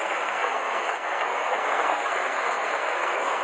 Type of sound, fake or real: fake